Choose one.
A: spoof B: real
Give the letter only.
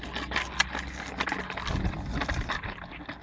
B